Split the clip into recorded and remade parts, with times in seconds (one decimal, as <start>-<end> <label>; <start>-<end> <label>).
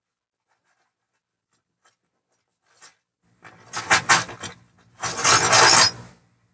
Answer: 0.0-1.3 recorded; 1.3-4.1 remade; 4.1-6.5 recorded